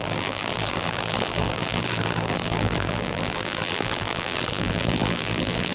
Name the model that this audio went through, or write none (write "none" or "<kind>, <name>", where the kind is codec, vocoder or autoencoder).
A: vocoder, BigVGAN v2